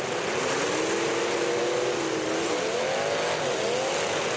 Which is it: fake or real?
real